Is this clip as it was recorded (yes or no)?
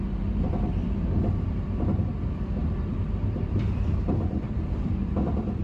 no